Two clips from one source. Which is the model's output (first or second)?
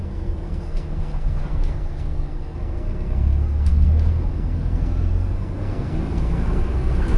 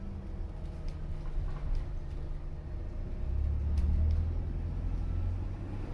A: first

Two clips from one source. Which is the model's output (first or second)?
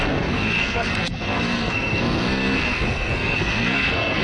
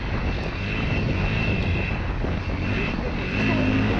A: first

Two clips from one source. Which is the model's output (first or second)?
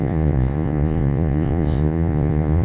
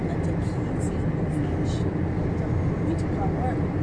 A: first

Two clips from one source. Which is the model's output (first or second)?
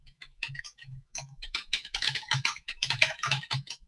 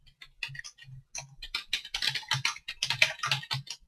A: first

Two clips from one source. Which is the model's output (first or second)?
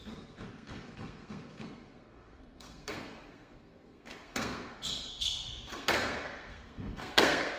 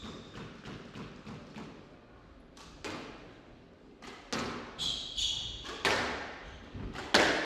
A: first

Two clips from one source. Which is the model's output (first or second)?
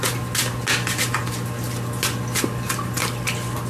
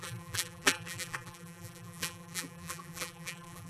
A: second